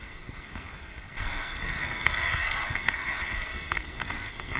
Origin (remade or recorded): remade